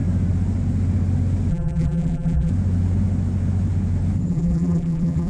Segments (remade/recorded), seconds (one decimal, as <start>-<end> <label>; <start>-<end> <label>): 0.0-1.5 recorded; 1.5-2.5 remade; 2.5-4.3 recorded; 4.3-5.3 remade